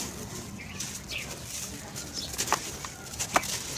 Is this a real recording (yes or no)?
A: yes